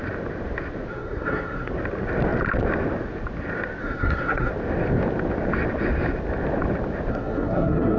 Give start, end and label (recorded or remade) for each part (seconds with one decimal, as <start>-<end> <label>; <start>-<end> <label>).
0.0-0.9 recorded; 0.9-1.7 remade; 1.7-3.8 recorded; 3.8-4.5 remade; 4.5-7.1 recorded; 7.1-8.0 remade